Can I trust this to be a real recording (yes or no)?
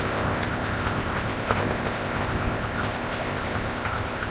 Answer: no